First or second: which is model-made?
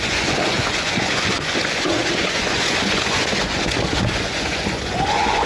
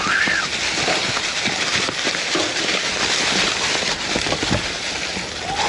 first